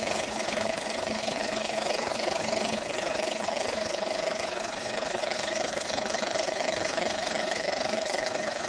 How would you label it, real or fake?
fake